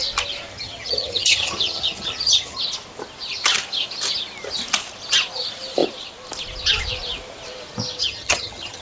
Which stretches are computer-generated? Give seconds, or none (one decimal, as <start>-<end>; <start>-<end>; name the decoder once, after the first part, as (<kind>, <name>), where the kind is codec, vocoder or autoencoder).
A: 0.5-2.6 (vocoder, HiFi-GAN); 8.0-8.8